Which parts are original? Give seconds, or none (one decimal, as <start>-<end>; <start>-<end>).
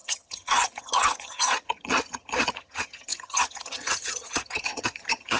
none